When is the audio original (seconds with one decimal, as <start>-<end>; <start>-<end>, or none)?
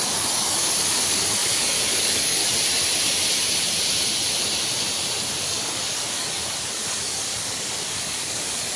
2.4-5.4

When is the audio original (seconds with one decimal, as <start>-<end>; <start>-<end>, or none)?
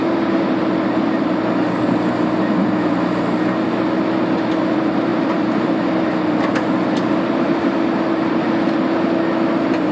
0.0-9.9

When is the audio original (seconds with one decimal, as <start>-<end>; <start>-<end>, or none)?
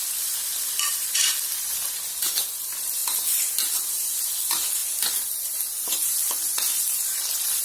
3.0-3.9; 4.8-7.6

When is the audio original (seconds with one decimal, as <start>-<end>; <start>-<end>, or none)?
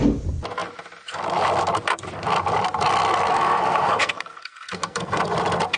0.0-3.3; 5.2-5.8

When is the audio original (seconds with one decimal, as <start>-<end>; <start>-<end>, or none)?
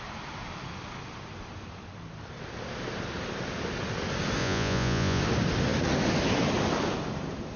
0.0-4.4; 5.2-7.6